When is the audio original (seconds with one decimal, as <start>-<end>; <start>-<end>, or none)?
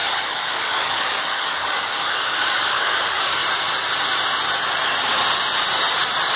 3.4-6.4